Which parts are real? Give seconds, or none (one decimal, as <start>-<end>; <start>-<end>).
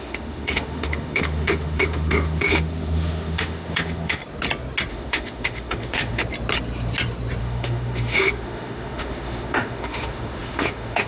4.2-4.9; 6.2-7.4